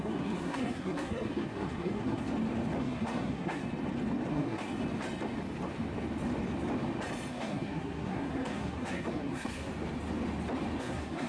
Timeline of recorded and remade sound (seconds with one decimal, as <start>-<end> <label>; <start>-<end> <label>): 0.0-2.2 remade; 2.2-2.8 recorded; 2.8-3.6 remade; 3.6-4.3 recorded; 4.3-4.7 remade; 4.7-7.3 recorded; 7.3-9.7 remade; 9.7-10.8 recorded; 10.8-11.3 remade